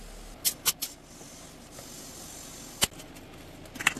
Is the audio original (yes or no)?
yes